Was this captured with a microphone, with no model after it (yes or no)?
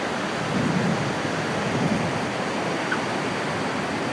no